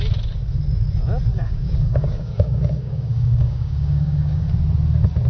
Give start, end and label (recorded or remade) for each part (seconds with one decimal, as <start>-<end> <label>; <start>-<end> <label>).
0.0-1.3 recorded; 1.3-4.5 remade; 4.5-5.3 recorded